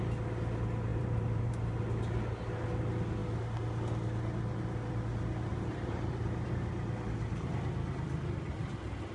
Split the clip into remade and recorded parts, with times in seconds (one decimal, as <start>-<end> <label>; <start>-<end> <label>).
0.0-0.9 recorded; 0.9-1.5 remade; 1.5-5.5 recorded; 5.5-6.9 remade; 6.9-9.1 recorded